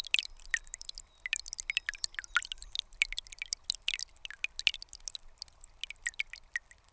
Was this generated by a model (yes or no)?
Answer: no